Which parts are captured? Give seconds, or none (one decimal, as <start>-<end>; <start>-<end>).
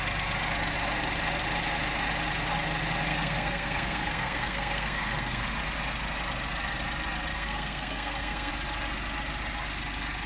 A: 0.0-3.1; 5.4-7.3; 8.5-10.3